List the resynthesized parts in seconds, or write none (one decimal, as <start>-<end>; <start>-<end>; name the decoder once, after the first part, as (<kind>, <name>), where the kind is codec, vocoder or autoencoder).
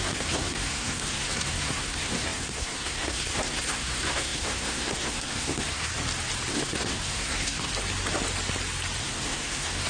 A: 0.0-5.9 (codec, SNAC); 6.5-7.7; 9.0-9.9